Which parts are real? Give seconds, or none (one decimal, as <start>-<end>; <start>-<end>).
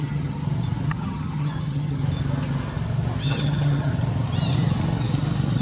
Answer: 0.4-0.9; 2.0-3.2; 3.9-5.6